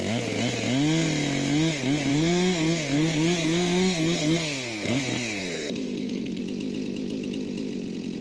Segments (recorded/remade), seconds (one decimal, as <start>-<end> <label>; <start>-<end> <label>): 0.0-2.1 recorded; 2.1-5.0 remade; 5.0-5.4 recorded; 5.4-6.4 remade; 6.4-8.2 recorded

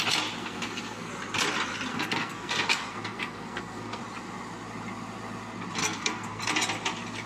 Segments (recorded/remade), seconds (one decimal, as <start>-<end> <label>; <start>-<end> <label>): 0.0-0.4 recorded; 0.4-1.1 remade; 1.1-1.9 recorded; 1.9-4.0 remade; 4.0-5.8 recorded; 5.8-6.4 remade; 6.4-7.3 recorded

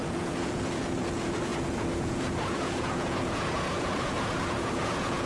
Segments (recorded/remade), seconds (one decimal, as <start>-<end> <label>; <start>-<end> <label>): 0.0-5.3 remade

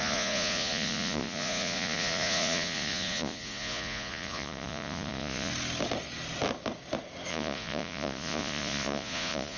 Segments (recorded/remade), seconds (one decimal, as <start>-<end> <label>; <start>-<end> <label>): 0.0-5.5 remade; 5.5-7.3 recorded; 7.3-9.6 remade

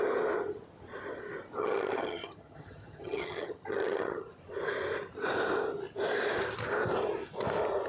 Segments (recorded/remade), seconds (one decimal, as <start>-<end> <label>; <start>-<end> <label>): 0.0-1.6 recorded; 1.6-4.3 remade; 4.3-7.9 recorded

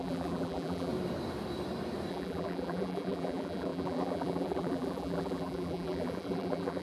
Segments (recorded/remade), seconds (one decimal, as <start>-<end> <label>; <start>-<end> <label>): 0.0-0.9 remade; 0.9-2.1 recorded; 2.1-6.8 remade